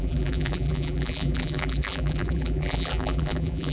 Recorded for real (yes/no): no